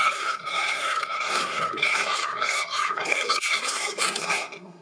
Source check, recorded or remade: remade